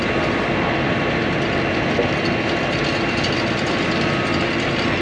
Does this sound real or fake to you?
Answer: real